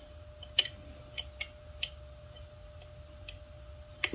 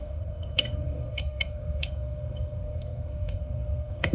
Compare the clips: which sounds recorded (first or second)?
first